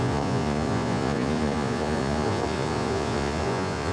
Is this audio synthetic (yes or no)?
yes